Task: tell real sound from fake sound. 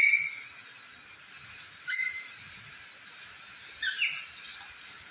real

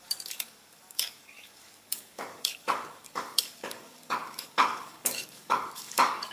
fake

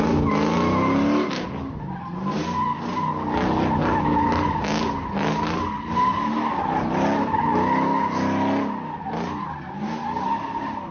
real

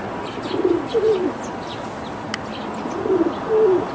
real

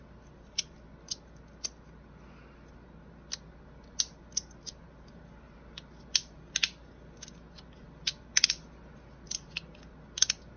real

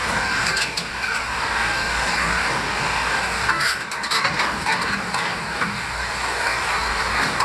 fake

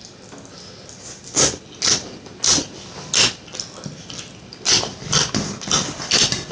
real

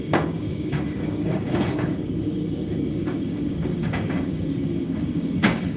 fake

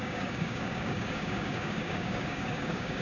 fake